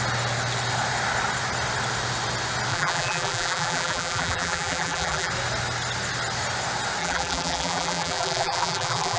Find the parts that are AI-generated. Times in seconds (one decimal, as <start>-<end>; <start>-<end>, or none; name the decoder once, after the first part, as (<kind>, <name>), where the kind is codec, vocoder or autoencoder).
2.7-5.3 (vocoder, BigVGAN v2); 7.0-9.2